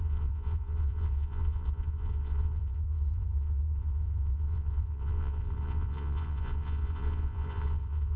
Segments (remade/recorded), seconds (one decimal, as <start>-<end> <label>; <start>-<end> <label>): 0.0-8.2 remade